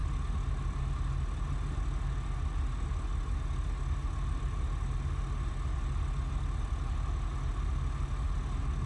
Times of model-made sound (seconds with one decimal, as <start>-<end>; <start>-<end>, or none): none